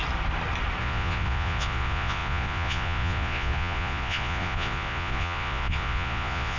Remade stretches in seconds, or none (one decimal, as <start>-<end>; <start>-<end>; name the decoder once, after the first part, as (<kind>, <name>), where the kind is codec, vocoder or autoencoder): 0.8-6.6 (vocoder, Vocos)